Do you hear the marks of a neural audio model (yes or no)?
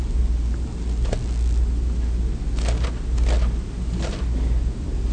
no